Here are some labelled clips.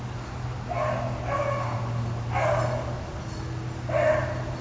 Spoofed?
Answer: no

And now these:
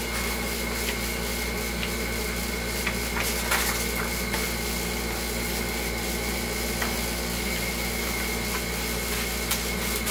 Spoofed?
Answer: no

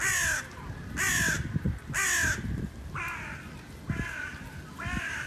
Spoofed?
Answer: no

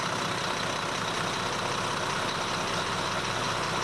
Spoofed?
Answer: no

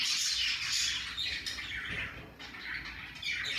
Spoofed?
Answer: no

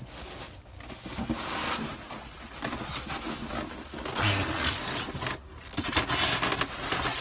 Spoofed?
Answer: no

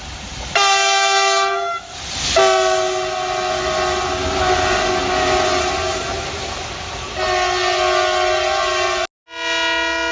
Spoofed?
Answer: no